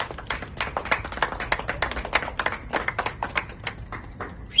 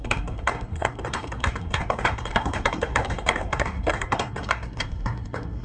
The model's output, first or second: second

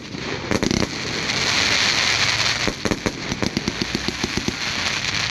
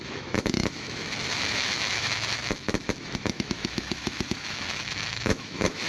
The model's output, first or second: second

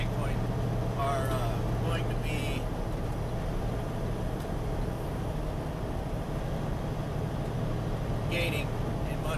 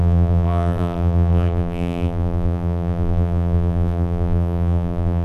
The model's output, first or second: second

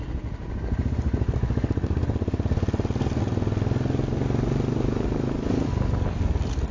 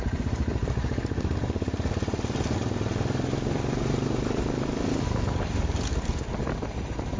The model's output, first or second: second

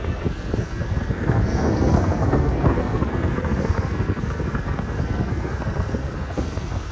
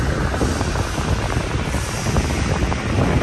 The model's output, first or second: first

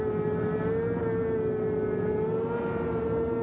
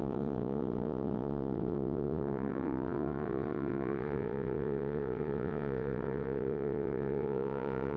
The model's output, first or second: second